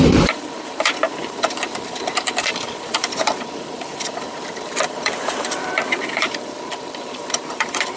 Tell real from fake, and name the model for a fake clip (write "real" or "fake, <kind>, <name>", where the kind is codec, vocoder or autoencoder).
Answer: fake, vocoder, BigVGAN v2